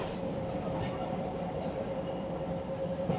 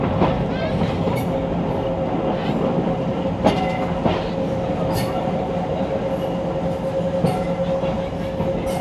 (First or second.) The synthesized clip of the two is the first